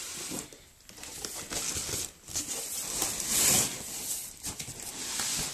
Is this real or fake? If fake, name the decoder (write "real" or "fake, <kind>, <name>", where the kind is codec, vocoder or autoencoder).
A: real